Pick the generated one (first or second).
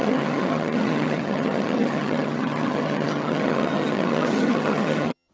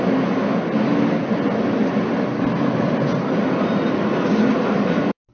first